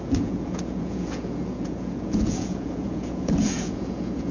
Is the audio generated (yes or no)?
yes